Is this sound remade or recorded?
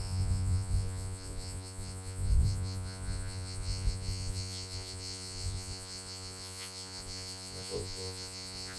remade